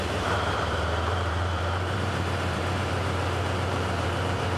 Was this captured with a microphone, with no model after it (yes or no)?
no